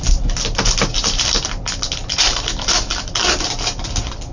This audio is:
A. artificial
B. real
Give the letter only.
B